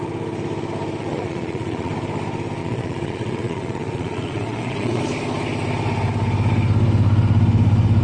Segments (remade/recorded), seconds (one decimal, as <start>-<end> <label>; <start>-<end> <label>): 0.0-1.0 recorded; 1.0-1.9 remade; 1.9-2.6 recorded; 2.6-5.0 remade; 5.0-8.0 recorded